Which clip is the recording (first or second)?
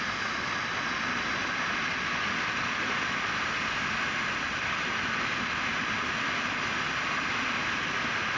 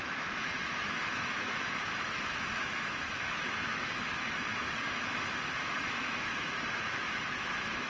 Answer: first